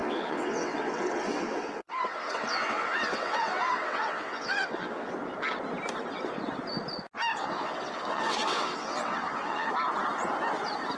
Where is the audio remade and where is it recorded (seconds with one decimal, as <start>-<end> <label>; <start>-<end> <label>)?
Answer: 0.0-5.1 remade; 5.1-7.3 recorded; 7.3-9.7 remade; 9.7-11.0 recorded